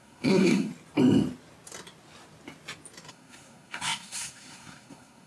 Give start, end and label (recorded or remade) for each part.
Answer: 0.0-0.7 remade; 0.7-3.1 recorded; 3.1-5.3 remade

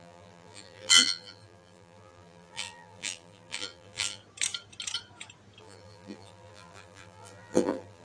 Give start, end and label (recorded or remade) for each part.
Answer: 0.0-4.2 remade; 4.2-5.6 recorded; 5.6-8.0 remade

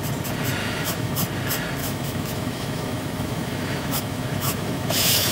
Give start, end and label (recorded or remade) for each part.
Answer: 0.0-0.6 recorded; 0.6-1.1 remade; 1.1-1.8 recorded; 1.8-5.3 remade

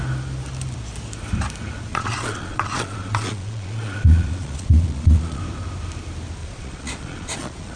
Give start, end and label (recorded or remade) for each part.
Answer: 0.0-1.9 recorded; 1.9-5.4 remade; 5.4-6.4 recorded; 6.4-7.8 remade

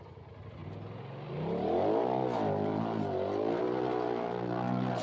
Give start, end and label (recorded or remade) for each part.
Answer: 0.0-5.0 recorded